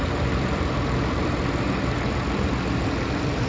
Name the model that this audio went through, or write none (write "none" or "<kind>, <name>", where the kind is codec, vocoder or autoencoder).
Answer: vocoder, BigVGAN v2